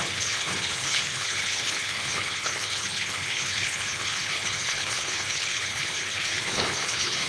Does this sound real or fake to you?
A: fake